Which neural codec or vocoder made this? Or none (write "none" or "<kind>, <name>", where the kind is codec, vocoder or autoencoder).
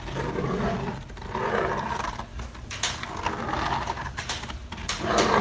none